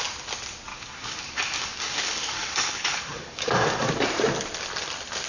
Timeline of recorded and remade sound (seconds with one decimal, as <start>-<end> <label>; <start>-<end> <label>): 0.0-0.7 recorded; 0.7-3.9 remade; 3.9-5.3 recorded

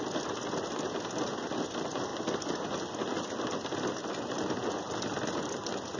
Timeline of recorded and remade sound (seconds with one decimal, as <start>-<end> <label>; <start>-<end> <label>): 0.0-6.0 recorded